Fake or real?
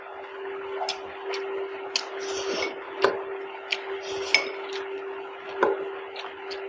real